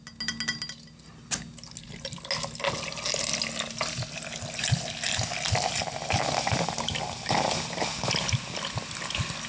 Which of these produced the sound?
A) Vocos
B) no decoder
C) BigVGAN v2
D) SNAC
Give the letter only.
B